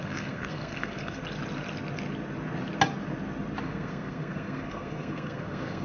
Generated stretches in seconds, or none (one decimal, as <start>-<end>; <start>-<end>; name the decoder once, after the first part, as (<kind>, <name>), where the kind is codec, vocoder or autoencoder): 0.0-1.2 (codec, SNAC); 3.6-5.8